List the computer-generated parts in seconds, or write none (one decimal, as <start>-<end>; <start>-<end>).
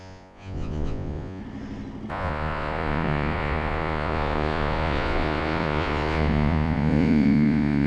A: 0.0-1.4; 2.1-7.9